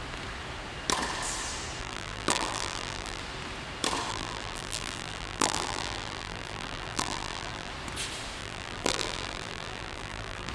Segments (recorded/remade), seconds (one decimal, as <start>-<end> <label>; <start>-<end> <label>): 0.0-1.8 recorded; 1.8-3.2 remade; 3.2-4.1 recorded; 4.1-7.7 remade; 7.7-8.4 recorded; 8.4-10.5 remade